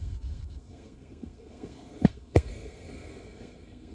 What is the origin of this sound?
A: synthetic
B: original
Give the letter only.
A